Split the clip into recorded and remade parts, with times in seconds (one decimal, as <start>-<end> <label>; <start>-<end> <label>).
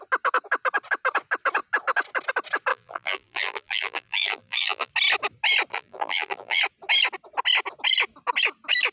0.0-2.7 recorded; 2.7-4.9 remade; 4.9-5.7 recorded; 5.7-6.6 remade; 6.6-8.9 recorded